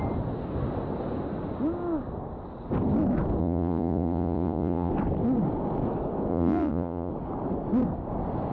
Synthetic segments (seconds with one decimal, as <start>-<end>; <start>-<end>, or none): 3.4-4.9; 6.3-7.1